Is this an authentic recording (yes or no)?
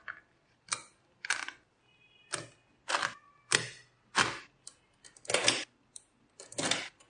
yes